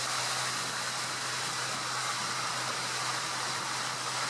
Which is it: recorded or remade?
recorded